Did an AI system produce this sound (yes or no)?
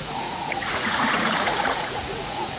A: yes